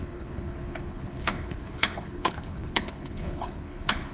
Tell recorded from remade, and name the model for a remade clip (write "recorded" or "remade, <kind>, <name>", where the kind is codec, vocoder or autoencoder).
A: remade, codec, HILCodec